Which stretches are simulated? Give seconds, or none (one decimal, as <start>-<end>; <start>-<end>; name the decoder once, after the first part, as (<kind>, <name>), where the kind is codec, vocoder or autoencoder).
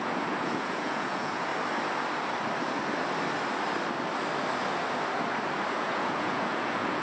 0.0-1.5 (vocoder, Vocos); 5.7-7.0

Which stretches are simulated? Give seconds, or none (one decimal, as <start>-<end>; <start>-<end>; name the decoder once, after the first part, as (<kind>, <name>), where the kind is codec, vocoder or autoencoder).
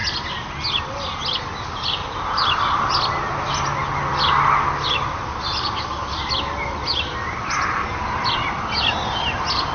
none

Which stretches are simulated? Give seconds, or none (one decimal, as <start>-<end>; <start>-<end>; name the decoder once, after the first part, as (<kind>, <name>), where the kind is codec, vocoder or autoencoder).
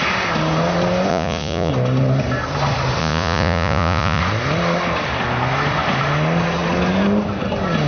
1.1-1.7 (vocoder, Vocos); 3.0-4.2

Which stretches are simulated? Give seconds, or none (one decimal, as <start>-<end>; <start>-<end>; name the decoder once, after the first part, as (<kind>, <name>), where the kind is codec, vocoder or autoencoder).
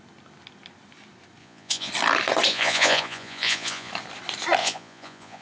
1.4-1.9 (vocoder, Vocos); 2.5-3.9; 4.6-5.4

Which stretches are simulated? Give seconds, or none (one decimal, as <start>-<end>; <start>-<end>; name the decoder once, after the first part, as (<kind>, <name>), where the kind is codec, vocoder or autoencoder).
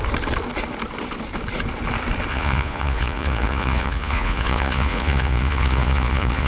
2.3-6.5 (vocoder, Vocos)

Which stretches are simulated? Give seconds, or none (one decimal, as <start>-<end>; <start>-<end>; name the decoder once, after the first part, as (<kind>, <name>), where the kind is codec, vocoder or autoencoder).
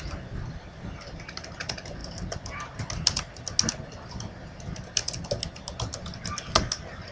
none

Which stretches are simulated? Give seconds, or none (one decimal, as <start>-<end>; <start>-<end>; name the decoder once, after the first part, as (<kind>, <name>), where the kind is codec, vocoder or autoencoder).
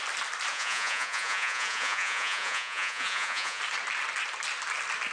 0.5-3.6 (vocoder, Vocos)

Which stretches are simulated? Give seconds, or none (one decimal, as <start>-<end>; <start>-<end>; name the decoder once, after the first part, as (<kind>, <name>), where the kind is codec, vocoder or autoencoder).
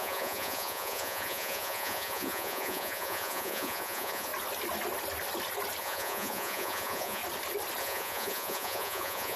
0.0-4.3 (vocoder, Vocos); 5.8-7.2; 7.8-9.4